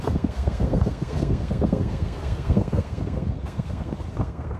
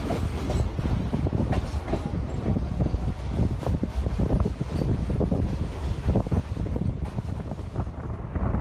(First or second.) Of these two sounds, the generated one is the first